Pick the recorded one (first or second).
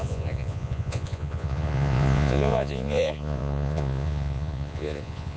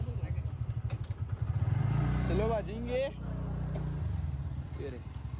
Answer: second